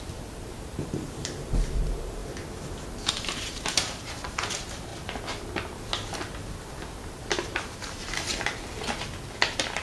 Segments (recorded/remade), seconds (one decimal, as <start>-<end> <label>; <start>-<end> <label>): 0.0-2.2 remade; 2.2-3.1 recorded; 3.1-4.9 remade; 4.9-6.7 recorded; 6.7-8.3 remade; 8.3-9.8 recorded